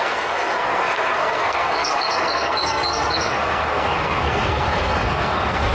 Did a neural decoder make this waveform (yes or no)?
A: yes